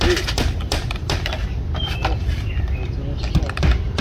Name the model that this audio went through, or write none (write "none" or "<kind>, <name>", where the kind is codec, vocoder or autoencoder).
none